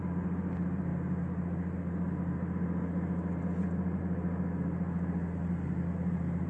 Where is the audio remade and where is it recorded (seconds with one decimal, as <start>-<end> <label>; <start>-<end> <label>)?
0.0-6.5 recorded